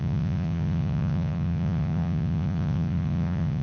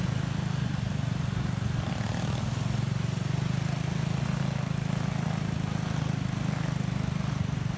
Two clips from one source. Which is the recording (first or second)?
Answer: second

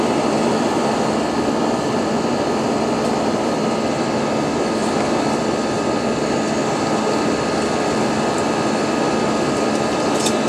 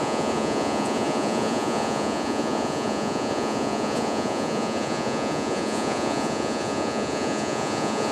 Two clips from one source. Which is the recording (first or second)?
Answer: first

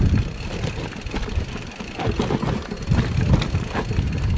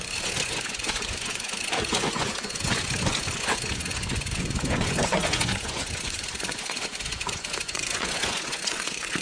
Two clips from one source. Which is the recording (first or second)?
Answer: first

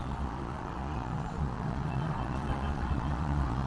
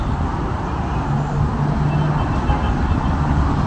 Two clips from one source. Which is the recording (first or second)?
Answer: second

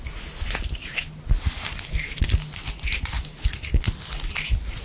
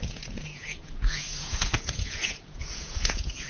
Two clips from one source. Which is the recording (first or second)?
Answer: first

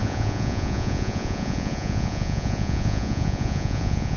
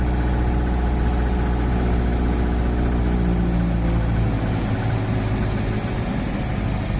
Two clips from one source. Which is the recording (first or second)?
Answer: second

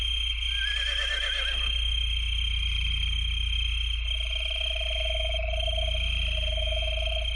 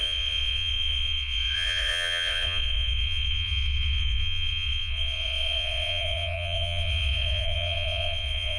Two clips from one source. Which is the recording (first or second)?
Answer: first